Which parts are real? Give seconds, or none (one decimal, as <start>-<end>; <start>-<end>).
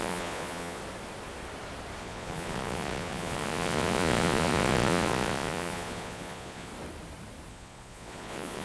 0.8-2.0; 6.7-7.5